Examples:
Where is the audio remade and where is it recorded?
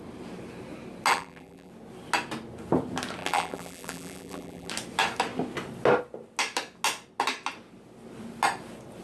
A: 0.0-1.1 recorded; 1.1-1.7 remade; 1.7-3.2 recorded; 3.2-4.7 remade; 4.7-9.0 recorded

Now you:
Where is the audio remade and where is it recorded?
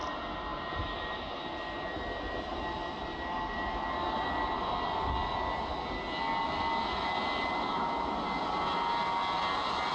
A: 0.0-9.9 recorded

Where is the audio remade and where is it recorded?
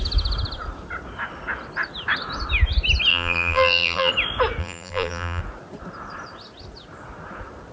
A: 0.0-3.1 recorded; 3.1-4.1 remade; 4.1-4.6 recorded; 4.6-5.4 remade; 5.4-7.7 recorded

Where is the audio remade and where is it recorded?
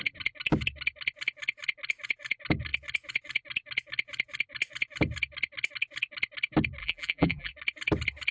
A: 0.0-6.8 recorded; 6.8-7.5 remade; 7.5-8.3 recorded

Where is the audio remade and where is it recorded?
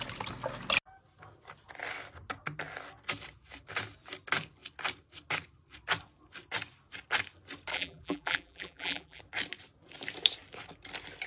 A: 0.0-7.7 recorded; 7.7-9.2 remade; 9.2-11.3 recorded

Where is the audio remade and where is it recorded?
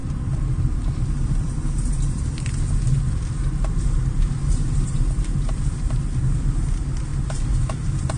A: 0.0-0.6 remade; 0.6-4.4 recorded; 4.4-5.9 remade; 5.9-7.1 recorded; 7.1-7.7 remade; 7.7-8.2 recorded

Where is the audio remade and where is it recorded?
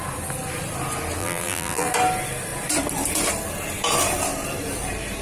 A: 0.0-1.2 recorded; 1.2-1.9 remade; 1.9-5.2 recorded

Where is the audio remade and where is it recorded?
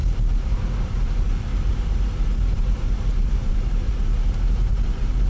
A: 0.0-5.3 remade